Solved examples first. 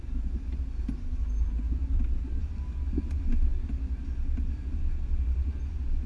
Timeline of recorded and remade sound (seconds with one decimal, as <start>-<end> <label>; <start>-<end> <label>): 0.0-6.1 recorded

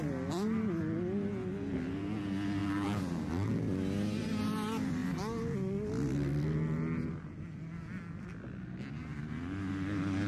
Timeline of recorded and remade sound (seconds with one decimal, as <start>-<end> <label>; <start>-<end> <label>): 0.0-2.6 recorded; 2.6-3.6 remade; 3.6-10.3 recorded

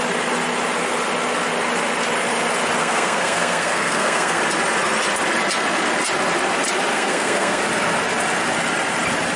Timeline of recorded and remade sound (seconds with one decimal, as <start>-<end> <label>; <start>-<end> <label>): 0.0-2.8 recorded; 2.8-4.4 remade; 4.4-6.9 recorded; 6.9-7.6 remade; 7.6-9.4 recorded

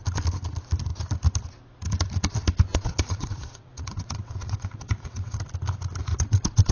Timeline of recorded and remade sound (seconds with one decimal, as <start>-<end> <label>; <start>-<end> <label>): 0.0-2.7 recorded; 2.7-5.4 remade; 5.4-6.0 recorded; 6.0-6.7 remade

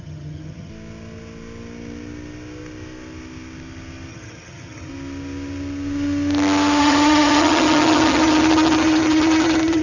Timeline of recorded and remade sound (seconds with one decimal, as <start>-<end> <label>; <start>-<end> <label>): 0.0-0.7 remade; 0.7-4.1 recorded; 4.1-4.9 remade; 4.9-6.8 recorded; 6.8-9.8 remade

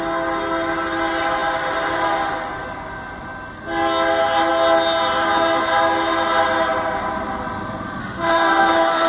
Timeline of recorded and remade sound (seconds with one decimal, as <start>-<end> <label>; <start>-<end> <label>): 0.0-8.0 recorded; 8.0-9.1 remade

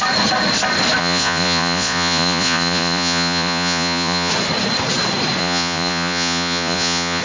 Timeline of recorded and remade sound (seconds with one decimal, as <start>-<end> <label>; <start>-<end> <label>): 0.0-1.0 recorded; 1.0-4.3 remade; 4.3-5.4 recorded; 5.4-7.2 remade